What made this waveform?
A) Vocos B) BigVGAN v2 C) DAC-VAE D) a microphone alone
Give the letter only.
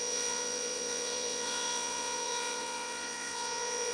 A